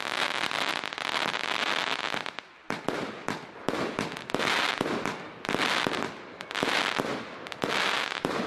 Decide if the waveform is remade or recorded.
recorded